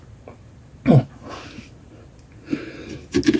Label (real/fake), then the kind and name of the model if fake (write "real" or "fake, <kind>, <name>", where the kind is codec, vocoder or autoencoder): real